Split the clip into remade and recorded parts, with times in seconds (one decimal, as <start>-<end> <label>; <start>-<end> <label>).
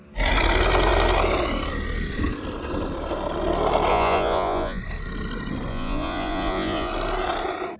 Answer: 0.0-3.9 recorded; 3.9-4.8 remade; 4.8-5.7 recorded; 5.7-6.9 remade; 6.9-7.8 recorded